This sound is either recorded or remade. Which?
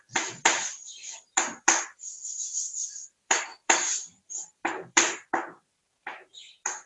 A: remade